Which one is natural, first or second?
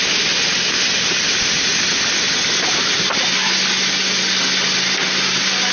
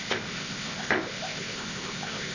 first